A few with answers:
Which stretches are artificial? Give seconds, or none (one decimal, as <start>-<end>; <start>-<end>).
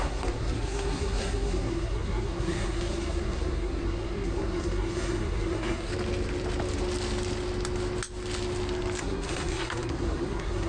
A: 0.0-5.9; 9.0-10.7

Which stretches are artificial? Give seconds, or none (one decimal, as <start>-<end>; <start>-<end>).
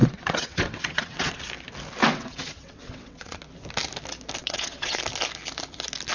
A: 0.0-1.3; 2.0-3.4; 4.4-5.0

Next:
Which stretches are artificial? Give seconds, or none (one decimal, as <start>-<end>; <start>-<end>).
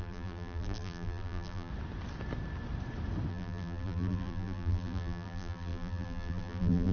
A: 0.0-1.7; 3.3-6.9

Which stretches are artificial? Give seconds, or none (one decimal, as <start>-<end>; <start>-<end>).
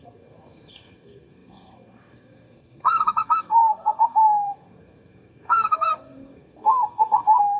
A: 0.0-7.6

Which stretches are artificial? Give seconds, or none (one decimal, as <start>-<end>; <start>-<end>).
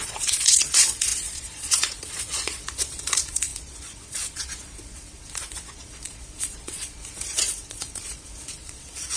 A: 0.0-9.2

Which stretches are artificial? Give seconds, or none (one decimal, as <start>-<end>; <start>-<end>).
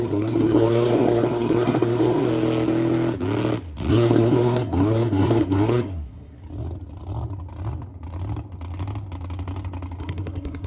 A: 0.0-2.3; 3.9-6.4; 10.0-10.7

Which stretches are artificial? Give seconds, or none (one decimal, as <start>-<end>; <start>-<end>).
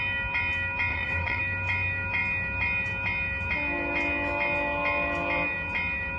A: 0.9-1.4